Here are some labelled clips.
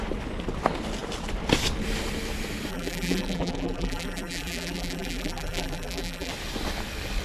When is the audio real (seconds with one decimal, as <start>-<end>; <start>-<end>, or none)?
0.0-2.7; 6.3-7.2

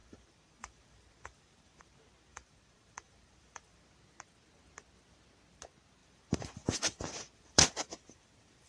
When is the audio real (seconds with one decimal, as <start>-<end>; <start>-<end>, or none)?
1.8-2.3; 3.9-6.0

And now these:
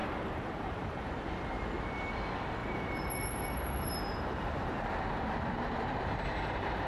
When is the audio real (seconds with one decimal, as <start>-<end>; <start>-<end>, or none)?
1.1-2.6